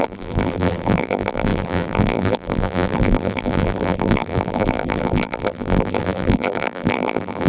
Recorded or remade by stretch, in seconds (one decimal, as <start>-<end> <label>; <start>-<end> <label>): 0.0-7.5 remade